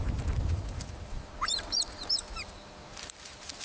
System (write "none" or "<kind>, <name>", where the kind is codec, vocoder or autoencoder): vocoder, BigVGAN v2